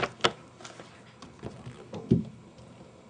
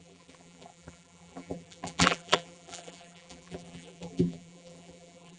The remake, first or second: second